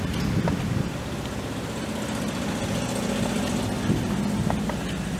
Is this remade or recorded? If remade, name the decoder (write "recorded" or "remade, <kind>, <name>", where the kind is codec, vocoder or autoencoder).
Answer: recorded